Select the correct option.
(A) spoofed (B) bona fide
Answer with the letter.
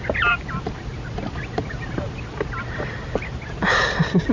B